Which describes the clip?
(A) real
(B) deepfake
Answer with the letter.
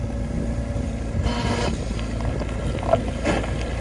A